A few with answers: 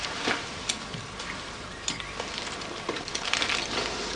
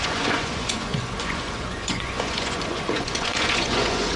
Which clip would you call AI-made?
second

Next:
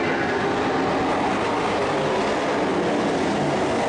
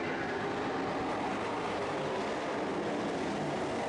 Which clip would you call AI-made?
second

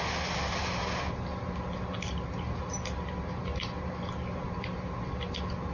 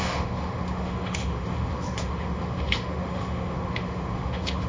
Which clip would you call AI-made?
second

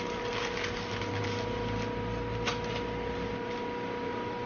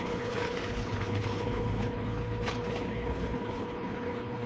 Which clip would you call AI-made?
second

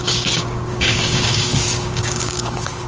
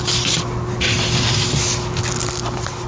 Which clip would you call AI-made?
first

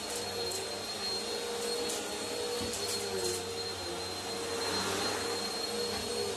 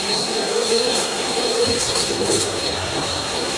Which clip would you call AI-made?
second